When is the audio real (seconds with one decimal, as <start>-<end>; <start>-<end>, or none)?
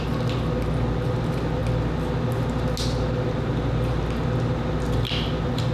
0.0-5.7